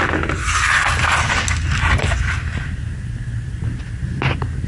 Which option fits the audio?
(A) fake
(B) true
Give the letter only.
B